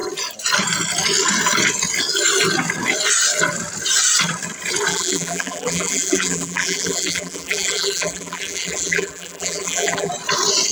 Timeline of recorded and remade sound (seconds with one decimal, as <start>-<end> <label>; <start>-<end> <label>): 0.0-4.9 recorded; 4.9-10.1 remade; 10.1-10.7 recorded